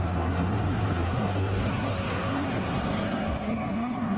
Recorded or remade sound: remade